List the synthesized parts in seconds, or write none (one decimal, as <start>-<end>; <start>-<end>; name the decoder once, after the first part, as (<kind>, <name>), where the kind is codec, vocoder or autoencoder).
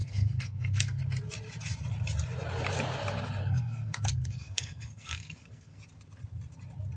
0.0-1.0 (codec, SNAC); 3.4-5.8